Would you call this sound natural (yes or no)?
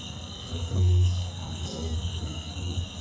no